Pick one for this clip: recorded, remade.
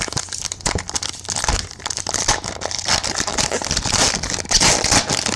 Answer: recorded